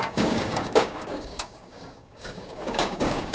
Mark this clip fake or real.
fake